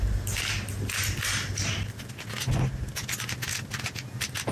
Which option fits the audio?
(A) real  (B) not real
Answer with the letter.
A